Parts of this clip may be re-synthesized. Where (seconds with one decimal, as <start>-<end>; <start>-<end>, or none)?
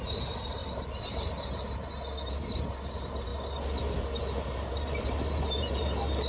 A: 0.0-0.6; 2.3-3.3; 4.4-6.3